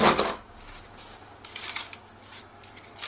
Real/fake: real